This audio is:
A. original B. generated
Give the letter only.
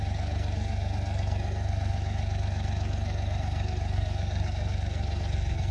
B